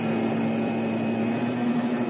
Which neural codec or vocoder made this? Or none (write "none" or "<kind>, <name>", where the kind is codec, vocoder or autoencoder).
vocoder, BigVGAN v2